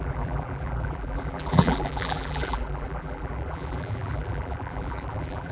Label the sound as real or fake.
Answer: fake